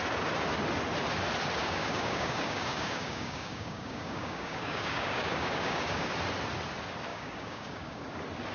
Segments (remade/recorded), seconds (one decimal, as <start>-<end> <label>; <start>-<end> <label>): 0.0-1.6 recorded; 1.6-6.1 remade; 6.1-7.1 recorded; 7.1-8.0 remade; 8.0-8.5 recorded